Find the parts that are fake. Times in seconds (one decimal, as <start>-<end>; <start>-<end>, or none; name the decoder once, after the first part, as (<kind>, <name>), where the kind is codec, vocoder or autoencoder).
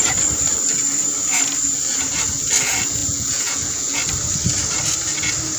3.0-4.0 (vocoder, Vocos)